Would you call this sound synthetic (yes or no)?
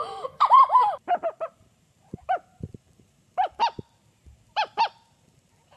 yes